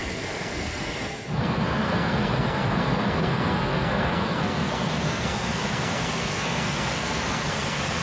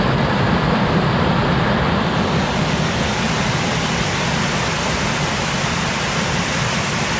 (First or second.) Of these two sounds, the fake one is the first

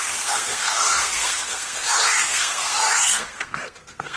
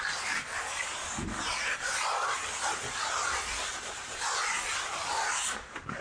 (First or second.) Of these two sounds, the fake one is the first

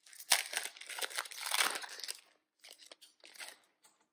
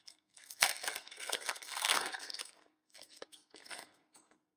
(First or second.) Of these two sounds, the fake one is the second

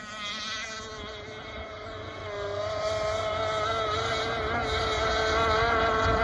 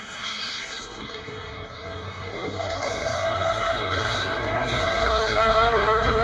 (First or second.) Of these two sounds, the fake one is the second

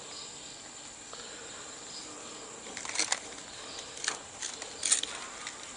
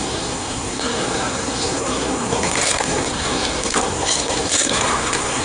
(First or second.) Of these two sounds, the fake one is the second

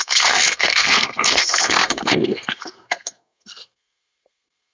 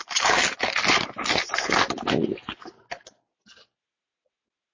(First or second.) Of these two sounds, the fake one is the first